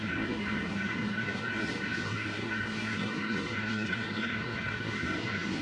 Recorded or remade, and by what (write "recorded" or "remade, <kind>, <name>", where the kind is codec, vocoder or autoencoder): remade, codec, SNAC